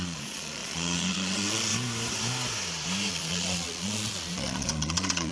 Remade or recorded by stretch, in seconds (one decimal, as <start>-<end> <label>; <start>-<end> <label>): 0.0-1.7 remade; 1.7-3.1 recorded; 3.1-5.3 remade